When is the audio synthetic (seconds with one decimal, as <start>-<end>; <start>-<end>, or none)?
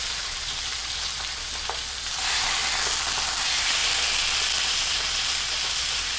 0.0-2.6; 3.4-3.8; 4.6-6.2